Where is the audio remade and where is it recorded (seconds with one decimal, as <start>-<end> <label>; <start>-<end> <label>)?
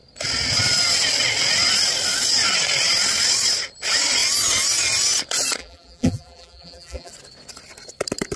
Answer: 0.0-5.6 recorded; 5.6-7.1 remade; 7.1-8.4 recorded